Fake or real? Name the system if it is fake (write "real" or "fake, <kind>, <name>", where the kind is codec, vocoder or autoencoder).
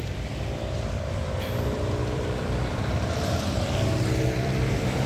fake, vocoder, BigVGAN v2